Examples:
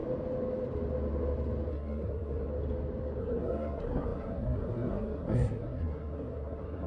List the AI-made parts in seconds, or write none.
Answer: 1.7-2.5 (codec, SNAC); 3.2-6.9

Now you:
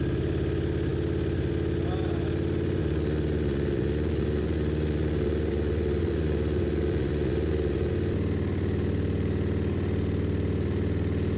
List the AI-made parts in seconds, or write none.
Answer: 2.8-7.9 (vocoder, Vocos)